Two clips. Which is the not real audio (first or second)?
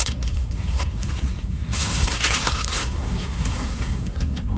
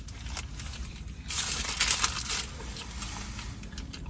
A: first